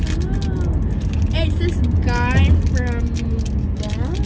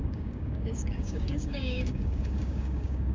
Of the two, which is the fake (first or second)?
second